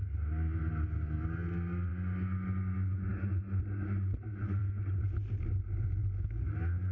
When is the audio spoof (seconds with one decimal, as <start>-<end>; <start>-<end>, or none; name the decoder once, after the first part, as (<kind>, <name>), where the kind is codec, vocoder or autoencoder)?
none

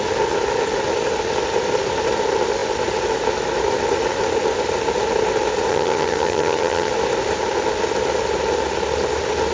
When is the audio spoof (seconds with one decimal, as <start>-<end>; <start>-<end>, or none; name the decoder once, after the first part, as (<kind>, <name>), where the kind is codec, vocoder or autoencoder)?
5.7-6.9 (vocoder, HiFi-GAN)

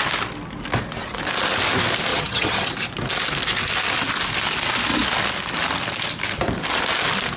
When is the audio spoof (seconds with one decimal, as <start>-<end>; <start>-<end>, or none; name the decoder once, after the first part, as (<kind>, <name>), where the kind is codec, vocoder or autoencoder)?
2.1-2.7 (vocoder, HiFi-GAN)